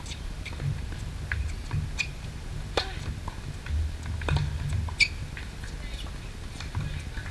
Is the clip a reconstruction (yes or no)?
no